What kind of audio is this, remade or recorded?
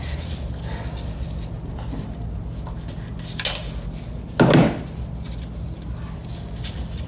recorded